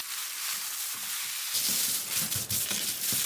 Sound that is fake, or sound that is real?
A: real